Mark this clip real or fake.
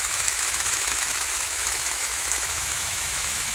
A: fake